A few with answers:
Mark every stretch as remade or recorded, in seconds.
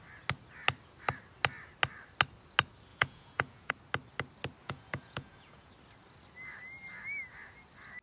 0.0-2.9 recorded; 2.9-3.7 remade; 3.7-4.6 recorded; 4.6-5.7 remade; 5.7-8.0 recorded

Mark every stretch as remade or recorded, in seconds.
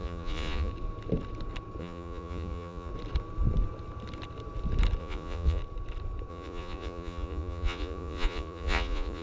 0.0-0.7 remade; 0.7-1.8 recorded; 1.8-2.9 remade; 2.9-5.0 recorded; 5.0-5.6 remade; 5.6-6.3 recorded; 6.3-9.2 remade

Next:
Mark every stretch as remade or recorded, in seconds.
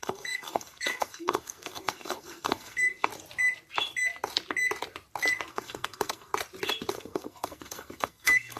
0.0-3.1 remade; 3.1-5.5 recorded; 5.5-6.3 remade; 6.3-6.9 recorded; 6.9-8.6 remade